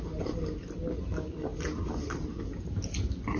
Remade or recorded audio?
recorded